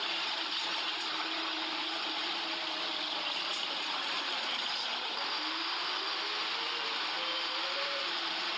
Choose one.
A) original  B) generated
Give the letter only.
B